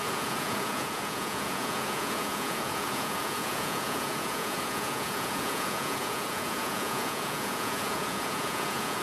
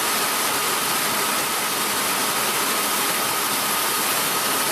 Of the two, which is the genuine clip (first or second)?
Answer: second